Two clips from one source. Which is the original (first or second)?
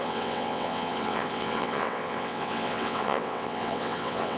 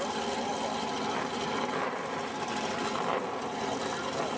second